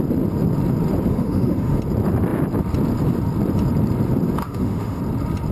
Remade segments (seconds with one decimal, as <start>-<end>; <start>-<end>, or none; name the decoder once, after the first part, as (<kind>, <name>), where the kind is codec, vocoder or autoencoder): 1.1-1.8 (autoencoder, DAC-VAE); 4.4-5.0